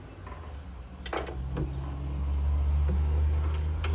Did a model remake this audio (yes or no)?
no